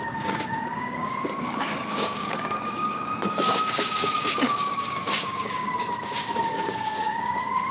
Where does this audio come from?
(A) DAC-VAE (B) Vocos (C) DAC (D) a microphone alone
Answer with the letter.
C